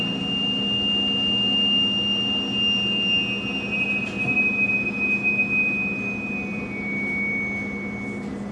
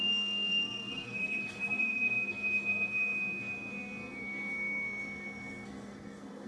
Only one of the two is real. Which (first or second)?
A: first